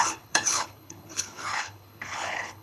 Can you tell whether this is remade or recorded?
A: remade